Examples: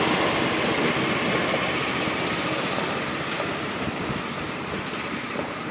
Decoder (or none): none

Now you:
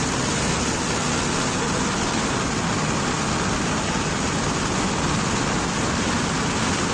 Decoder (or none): none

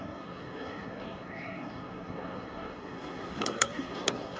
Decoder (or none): codec, SNAC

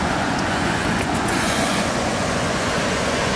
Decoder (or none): vocoder, Vocos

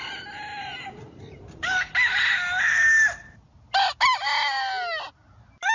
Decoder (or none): none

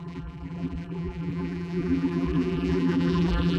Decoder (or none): vocoder, BigVGAN v2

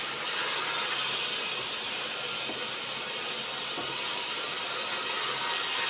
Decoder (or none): none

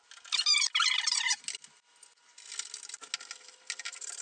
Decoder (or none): none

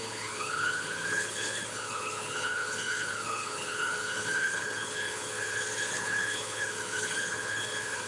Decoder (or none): codec, HILCodec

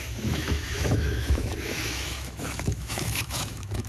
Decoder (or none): autoencoder, DAC-VAE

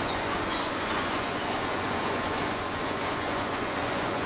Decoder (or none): vocoder, Vocos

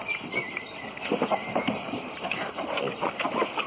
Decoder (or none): none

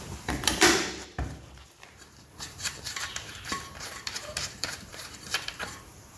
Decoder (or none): vocoder, BigVGAN v2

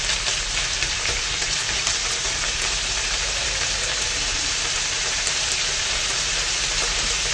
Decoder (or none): vocoder, BigVGAN v2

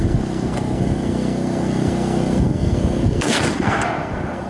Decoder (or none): codec, SNAC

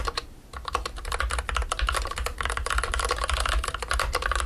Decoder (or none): none